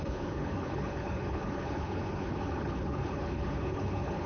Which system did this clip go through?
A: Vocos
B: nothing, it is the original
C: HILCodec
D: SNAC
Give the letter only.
C